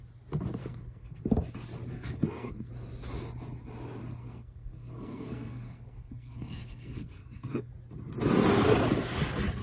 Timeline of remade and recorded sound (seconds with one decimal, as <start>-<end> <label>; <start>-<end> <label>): 0.0-0.6 recorded; 0.6-1.2 remade; 1.2-1.9 recorded; 1.9-2.7 remade; 2.7-4.2 recorded; 4.2-7.7 remade; 7.7-9.6 recorded